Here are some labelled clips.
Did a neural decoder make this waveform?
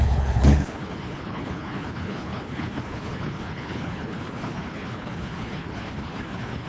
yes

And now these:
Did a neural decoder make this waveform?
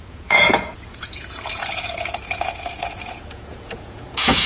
yes